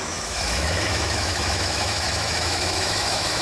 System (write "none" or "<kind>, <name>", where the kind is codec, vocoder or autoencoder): autoencoder, DAC-VAE